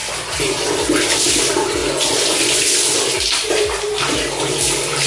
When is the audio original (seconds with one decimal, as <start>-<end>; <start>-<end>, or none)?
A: 0.0-1.8; 2.6-5.1